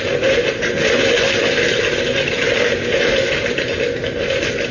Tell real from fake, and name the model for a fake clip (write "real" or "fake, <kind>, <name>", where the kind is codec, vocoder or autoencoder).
real